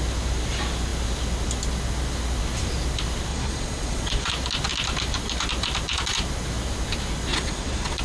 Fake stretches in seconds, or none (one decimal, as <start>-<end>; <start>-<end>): 3.3-4.3; 7.3-8.0